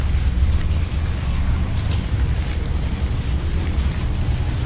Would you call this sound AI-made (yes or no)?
no